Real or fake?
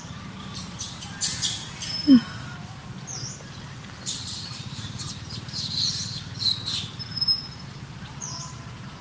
fake